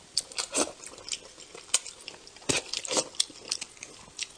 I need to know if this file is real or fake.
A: real